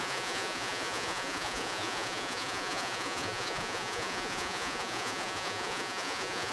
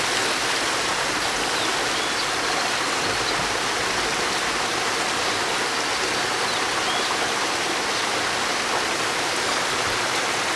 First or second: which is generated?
first